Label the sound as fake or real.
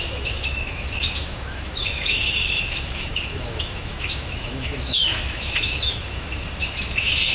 fake